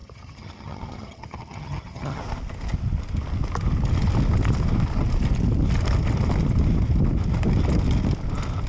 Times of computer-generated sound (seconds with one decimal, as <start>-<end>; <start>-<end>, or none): 0.0-2.2